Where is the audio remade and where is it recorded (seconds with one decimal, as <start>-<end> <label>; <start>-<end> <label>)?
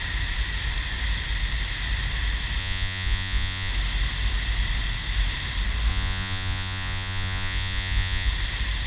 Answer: 0.0-2.6 recorded; 2.6-3.7 remade; 3.7-5.9 recorded; 5.9-8.3 remade; 8.3-8.9 recorded